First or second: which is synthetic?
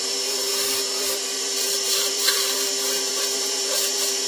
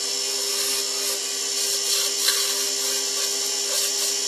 first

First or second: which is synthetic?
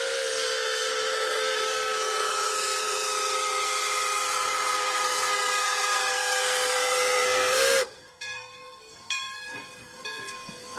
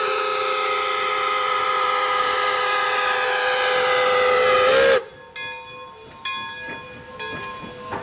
first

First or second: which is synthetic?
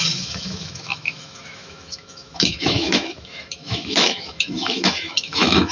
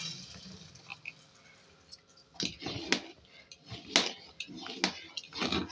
first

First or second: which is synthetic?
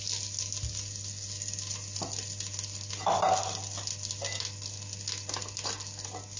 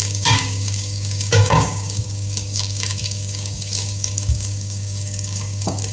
second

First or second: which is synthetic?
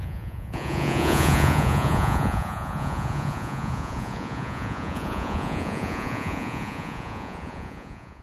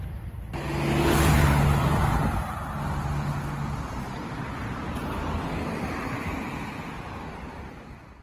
first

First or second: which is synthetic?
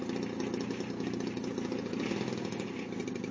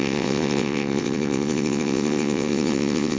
second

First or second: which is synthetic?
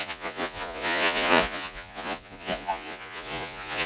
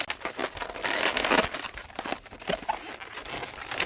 first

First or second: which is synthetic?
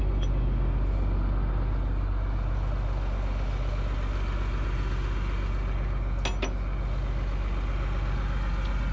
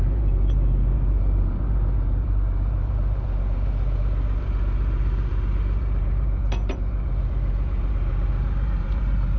second